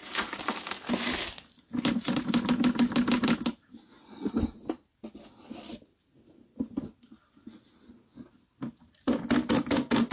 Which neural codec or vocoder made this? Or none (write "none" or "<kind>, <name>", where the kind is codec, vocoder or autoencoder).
none